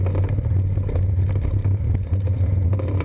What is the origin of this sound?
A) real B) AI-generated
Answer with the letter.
A